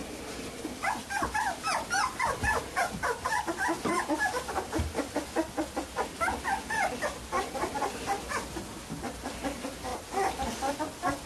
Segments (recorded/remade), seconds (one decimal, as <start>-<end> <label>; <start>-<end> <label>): 0.0-11.3 recorded